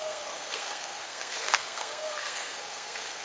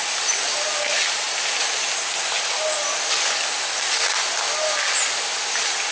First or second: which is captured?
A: second